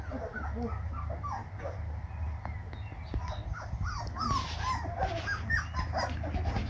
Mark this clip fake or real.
real